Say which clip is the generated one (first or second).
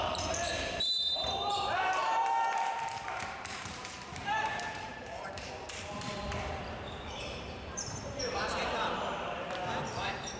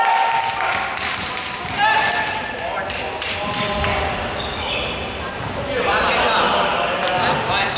first